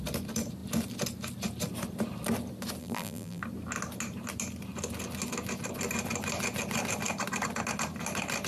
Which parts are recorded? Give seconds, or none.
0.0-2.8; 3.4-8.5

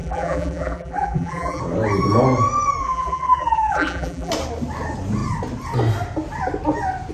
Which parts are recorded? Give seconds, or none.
1.6-2.8; 4.3-7.1

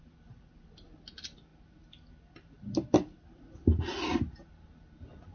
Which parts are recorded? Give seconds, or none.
0.0-5.3

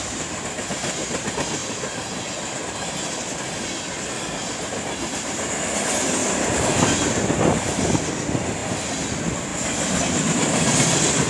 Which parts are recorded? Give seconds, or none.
1.6-2.9; 6.2-6.8; 8.6-9.1; 9.5-10.0

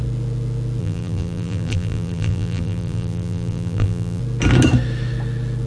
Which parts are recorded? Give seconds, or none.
0.0-0.8; 4.2-5.7

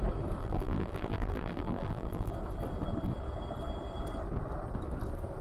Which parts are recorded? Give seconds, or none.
0.0-0.4; 2.3-5.4

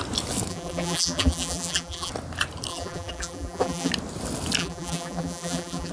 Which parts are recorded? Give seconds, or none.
0.0-0.5; 2.1-2.7; 3.9-4.6